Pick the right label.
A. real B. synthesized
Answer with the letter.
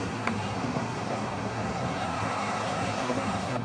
B